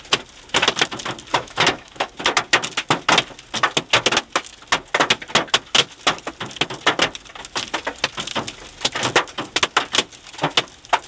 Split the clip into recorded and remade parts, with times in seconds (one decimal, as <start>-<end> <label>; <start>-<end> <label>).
0.0-1.3 recorded; 1.3-2.1 remade; 2.1-11.1 recorded